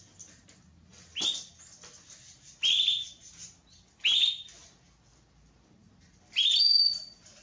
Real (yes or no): yes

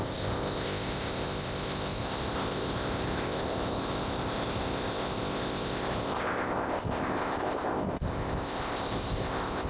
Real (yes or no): no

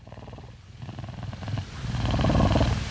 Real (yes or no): yes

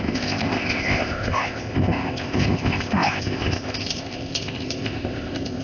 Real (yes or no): no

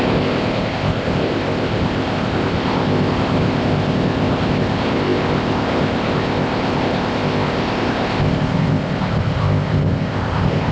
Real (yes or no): no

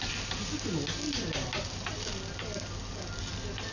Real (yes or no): yes